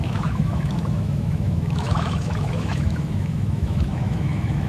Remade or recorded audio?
remade